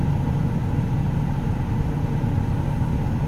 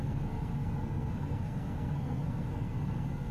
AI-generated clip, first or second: second